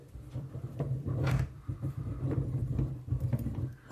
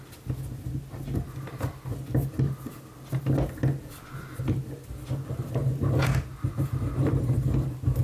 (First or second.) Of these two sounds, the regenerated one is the first